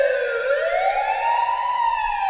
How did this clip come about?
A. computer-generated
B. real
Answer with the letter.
B